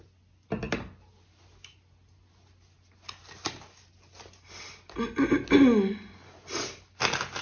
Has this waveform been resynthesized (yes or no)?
no